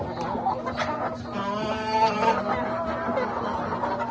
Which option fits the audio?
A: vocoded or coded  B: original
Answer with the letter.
B